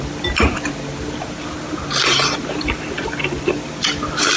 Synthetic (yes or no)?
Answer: no